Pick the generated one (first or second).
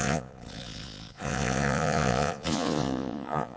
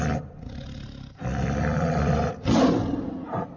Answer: first